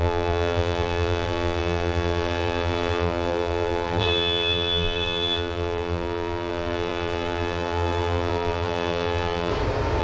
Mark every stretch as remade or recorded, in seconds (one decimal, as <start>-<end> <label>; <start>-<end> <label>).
0.0-9.5 remade; 9.5-10.0 recorded